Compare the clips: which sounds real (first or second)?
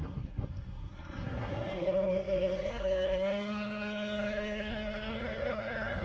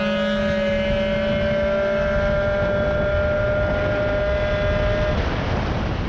second